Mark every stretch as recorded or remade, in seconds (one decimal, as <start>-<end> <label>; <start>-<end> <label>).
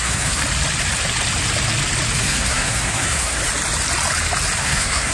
0.0-0.4 remade; 0.4-2.2 recorded; 2.2-3.4 remade; 3.4-4.6 recorded; 4.6-5.1 remade